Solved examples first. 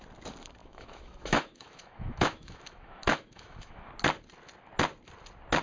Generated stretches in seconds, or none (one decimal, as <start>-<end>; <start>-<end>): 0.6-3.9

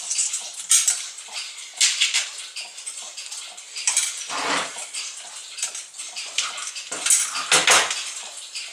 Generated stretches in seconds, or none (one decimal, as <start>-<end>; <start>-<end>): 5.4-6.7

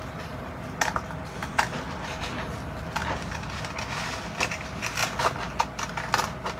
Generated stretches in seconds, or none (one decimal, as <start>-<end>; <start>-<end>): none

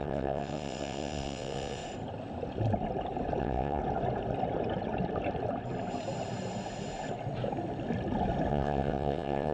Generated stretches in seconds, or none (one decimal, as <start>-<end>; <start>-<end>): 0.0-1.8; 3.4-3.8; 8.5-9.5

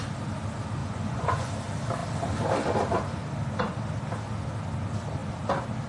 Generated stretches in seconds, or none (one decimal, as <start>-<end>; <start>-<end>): 0.8-1.5